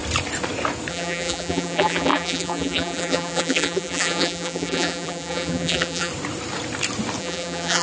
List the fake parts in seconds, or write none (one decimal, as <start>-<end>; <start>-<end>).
0.9-6.1; 7.2-7.8